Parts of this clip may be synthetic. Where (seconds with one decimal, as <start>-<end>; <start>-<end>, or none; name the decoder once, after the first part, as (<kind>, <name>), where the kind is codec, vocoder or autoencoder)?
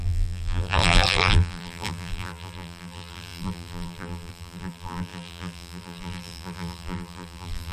0.0-7.7 (vocoder, BigVGAN v2)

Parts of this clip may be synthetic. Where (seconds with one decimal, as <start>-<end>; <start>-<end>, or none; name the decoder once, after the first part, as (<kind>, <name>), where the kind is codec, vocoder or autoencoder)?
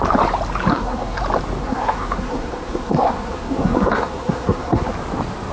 0.7-1.2 (codec, SNAC); 1.6-4.9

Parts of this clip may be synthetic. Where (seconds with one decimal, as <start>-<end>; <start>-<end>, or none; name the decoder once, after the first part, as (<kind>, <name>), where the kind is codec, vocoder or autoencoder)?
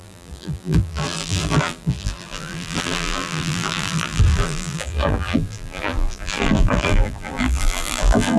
0.0-8.4 (vocoder, BigVGAN v2)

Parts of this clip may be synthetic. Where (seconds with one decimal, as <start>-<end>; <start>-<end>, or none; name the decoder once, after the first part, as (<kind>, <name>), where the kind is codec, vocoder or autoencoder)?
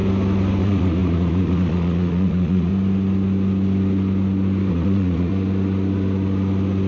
0.6-2.7 (vocoder, Vocos); 4.7-5.3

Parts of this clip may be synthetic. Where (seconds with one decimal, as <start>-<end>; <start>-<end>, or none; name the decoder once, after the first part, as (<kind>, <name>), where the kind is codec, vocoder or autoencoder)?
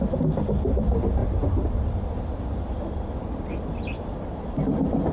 none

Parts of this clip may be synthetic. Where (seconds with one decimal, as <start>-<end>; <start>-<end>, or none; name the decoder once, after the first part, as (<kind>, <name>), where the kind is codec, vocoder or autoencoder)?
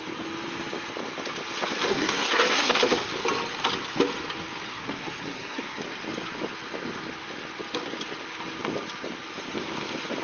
1.9-3.1 (codec, SNAC); 4.7-5.8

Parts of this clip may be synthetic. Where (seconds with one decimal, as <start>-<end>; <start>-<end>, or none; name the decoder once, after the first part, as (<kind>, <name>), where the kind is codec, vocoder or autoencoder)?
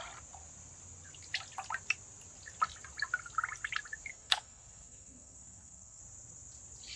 4.1-6.0 (codec, SNAC)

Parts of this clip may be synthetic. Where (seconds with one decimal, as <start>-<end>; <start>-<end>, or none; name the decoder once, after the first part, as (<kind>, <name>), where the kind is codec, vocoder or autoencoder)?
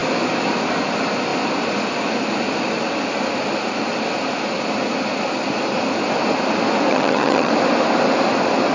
6.9-7.5 (vocoder, HiFi-GAN)